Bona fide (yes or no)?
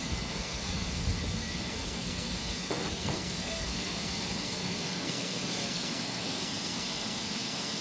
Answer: no